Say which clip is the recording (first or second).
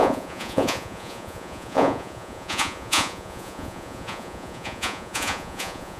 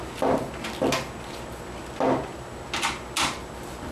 second